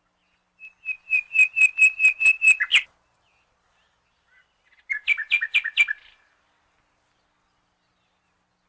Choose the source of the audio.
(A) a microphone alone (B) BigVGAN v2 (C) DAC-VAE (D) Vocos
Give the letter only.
A